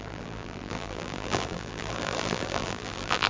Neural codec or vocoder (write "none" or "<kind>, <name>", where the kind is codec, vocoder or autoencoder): vocoder, BigVGAN v2